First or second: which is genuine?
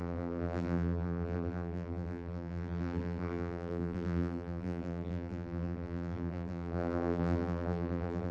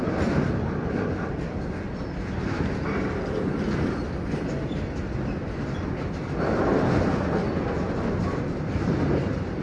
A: second